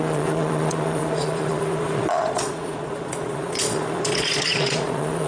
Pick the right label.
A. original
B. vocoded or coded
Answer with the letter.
B